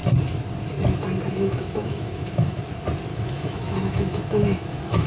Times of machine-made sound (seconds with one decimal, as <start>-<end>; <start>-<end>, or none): 1.3-2.6; 3.1-5.1